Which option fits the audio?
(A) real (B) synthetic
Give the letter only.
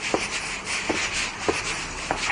A